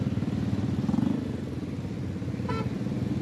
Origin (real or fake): real